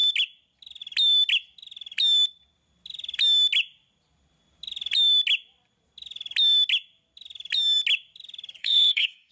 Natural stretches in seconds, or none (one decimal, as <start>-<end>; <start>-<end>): 0.0-8.6